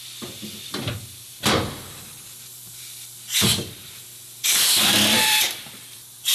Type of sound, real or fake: fake